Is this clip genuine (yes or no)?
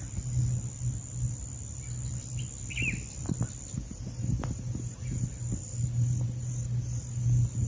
yes